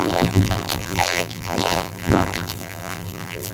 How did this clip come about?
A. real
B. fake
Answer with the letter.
B